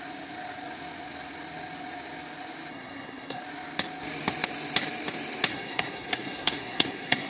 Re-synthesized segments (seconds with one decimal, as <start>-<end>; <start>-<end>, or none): 2.7-3.4; 5.5-7.3